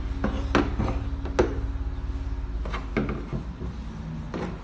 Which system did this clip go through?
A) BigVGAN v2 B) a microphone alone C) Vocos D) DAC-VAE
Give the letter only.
B